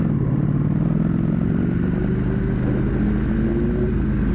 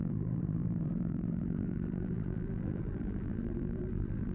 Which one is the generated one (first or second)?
second